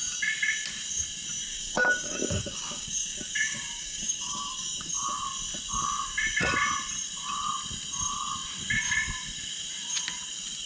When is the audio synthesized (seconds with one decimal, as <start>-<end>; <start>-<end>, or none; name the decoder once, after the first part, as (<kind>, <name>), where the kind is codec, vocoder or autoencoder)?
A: 1.5-4.8 (codec, DAC)